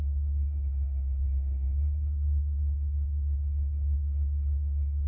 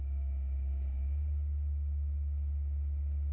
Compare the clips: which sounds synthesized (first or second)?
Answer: first